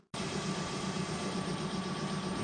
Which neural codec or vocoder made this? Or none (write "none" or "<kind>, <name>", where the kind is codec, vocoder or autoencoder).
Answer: none